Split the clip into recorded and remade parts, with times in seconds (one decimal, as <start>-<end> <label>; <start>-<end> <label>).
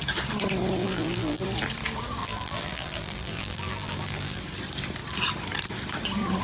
0.0-0.8 recorded; 0.8-1.4 remade; 1.4-2.2 recorded; 2.2-4.4 remade; 4.4-6.4 recorded